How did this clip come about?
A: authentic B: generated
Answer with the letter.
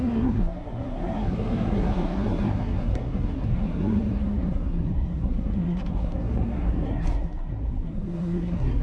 B